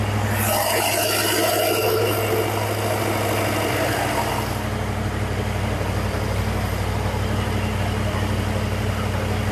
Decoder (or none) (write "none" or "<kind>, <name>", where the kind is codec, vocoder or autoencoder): none